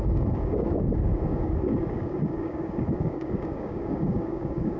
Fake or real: fake